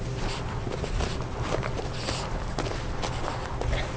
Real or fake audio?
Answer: real